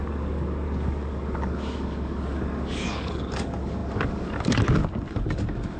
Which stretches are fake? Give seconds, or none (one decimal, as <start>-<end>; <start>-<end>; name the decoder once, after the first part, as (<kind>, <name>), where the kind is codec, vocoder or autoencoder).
0.0-5.8 (codec, DAC)